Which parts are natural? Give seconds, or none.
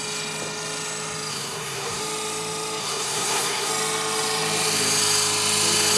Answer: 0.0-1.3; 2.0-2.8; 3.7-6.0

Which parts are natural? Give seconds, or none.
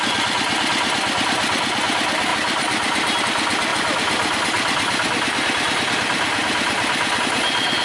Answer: 0.0-7.8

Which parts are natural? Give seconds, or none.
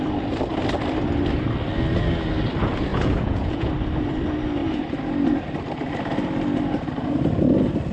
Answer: 0.0-2.9; 3.7-7.9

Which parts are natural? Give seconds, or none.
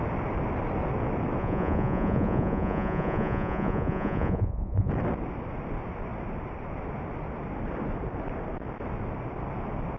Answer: 0.0-1.4; 4.9-10.0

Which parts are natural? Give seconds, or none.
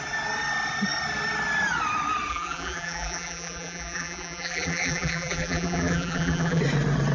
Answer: 0.0-2.3; 6.6-7.1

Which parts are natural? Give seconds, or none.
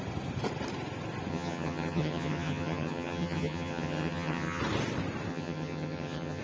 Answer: 0.0-1.3; 4.6-5.3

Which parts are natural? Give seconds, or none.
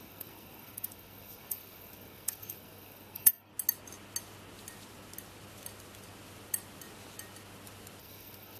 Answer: 3.5-8.0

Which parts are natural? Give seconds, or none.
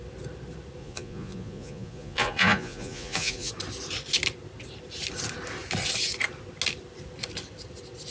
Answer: 0.0-0.8; 3.5-8.1